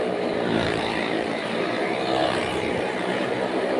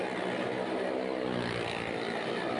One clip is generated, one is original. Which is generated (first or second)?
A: first